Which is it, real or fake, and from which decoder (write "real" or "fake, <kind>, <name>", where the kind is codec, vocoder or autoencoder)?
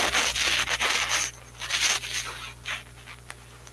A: real